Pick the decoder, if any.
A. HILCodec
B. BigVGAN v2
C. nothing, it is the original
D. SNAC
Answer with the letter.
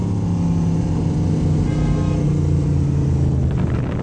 C